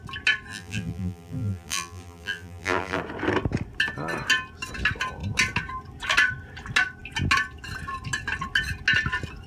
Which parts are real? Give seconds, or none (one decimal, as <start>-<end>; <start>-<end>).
0.0-0.5; 3.0-9.5